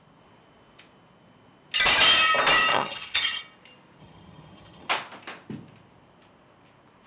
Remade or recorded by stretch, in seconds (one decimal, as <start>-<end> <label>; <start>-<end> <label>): 0.0-2.7 recorded; 2.7-3.4 remade; 3.4-4.0 recorded; 4.0-4.9 remade; 4.9-7.1 recorded